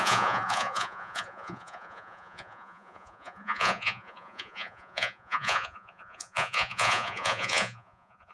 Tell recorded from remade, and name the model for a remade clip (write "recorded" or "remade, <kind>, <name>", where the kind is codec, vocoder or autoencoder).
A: remade, vocoder, Vocos